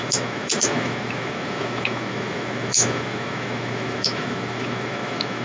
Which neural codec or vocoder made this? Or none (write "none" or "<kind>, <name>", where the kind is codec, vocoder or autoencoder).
autoencoder, DAC-VAE